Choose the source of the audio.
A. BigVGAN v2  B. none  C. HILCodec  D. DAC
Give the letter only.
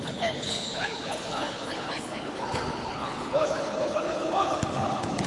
C